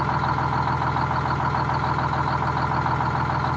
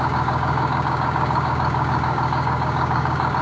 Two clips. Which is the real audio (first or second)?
first